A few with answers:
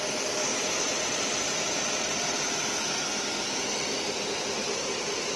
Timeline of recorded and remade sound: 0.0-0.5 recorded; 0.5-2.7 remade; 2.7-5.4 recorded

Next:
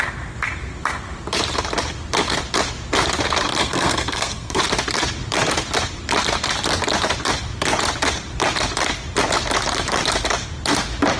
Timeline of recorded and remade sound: 0.0-3.6 recorded; 3.6-4.6 remade; 4.6-11.2 recorded

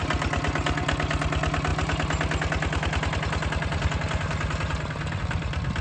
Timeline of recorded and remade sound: 0.0-5.8 recorded